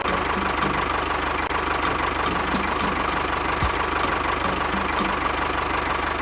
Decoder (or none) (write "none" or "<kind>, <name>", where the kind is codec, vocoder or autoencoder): none